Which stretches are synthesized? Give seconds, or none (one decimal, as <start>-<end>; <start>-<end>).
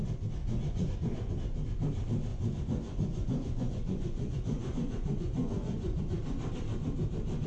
0.4-1.3; 2.3-6.0